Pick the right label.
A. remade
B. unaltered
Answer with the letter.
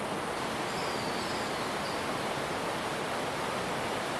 B